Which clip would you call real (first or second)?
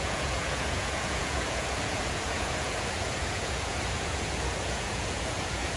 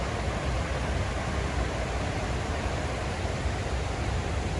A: second